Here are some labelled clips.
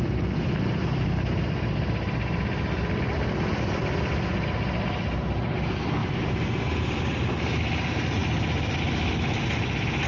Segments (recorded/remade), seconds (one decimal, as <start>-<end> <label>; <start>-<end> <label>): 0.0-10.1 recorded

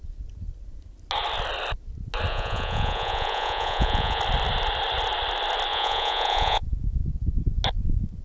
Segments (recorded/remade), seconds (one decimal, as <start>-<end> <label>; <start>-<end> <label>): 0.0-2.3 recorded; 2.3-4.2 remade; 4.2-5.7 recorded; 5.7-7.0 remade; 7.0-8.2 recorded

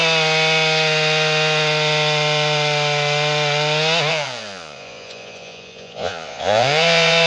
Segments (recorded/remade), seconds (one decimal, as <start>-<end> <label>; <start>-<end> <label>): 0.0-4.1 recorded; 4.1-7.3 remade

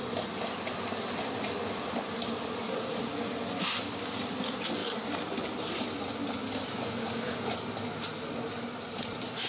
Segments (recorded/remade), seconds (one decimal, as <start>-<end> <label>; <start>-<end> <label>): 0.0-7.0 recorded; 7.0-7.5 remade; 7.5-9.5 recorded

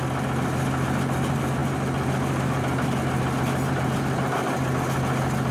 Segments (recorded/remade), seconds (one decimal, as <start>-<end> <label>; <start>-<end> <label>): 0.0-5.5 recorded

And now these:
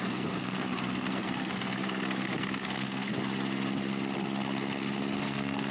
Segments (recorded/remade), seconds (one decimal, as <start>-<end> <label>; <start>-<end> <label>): 0.0-3.1 remade; 3.1-5.2 recorded; 5.2-5.7 remade

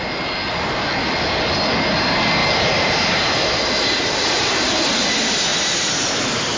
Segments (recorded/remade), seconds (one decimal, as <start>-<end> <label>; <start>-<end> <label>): 0.0-2.4 recorded; 2.4-5.0 remade; 5.0-6.6 recorded